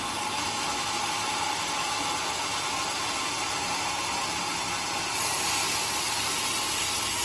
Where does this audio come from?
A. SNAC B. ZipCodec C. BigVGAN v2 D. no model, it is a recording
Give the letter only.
D